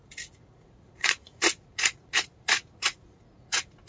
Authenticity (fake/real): fake